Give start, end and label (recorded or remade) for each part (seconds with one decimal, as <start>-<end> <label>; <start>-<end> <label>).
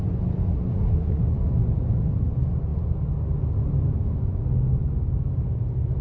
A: 0.0-0.5 recorded; 0.5-1.2 remade; 1.2-6.0 recorded